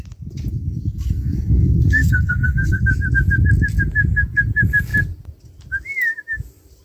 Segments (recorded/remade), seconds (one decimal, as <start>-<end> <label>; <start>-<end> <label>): 0.0-0.5 recorded; 0.5-2.9 remade; 2.9-6.8 recorded